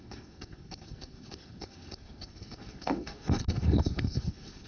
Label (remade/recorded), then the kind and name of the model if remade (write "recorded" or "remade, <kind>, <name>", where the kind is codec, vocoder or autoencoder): remade, codec, SNAC